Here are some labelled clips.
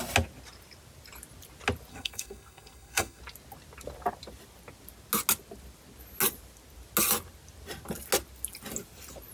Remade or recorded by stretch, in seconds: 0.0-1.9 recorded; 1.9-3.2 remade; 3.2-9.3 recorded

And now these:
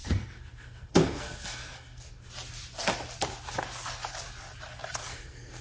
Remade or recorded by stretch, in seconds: 0.0-2.3 remade; 2.3-5.0 recorded; 5.0-5.6 remade

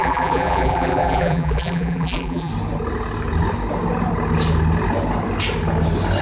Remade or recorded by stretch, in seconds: 0.0-2.5 remade; 2.5-6.2 recorded

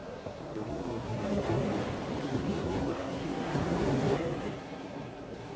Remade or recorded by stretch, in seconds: 0.0-1.7 remade; 1.7-2.2 recorded; 2.2-5.6 remade

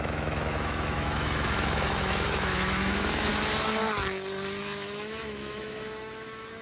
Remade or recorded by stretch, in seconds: 0.0-3.3 remade; 3.3-4.6 recorded; 4.6-6.6 remade